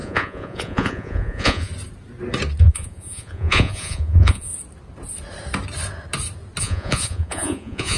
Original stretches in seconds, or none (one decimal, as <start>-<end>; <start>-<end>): 1.7-2.6; 4.5-6.6